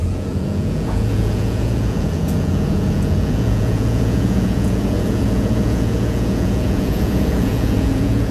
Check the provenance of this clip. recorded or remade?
remade